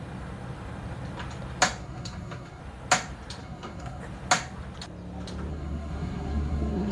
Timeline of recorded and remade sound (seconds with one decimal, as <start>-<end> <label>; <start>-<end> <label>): 0.0-1.8 recorded; 1.8-2.6 remade; 2.6-3.4 recorded; 3.4-4.0 remade; 4.0-5.5 recorded; 5.5-6.9 remade